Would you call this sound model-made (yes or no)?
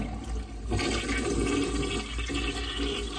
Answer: no